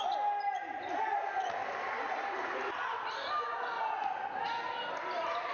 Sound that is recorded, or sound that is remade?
recorded